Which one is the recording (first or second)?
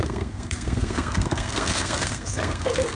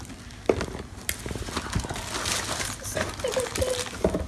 second